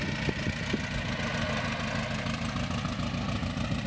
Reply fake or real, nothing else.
real